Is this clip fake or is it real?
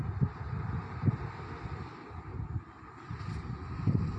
real